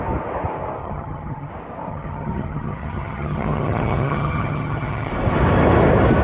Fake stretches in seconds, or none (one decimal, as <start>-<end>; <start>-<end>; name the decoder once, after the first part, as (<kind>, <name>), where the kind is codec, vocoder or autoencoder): 0.8-1.5 (vocoder, HiFi-GAN); 1.9-5.1